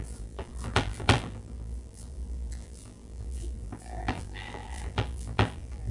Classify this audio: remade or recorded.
remade